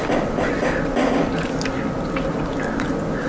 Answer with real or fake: real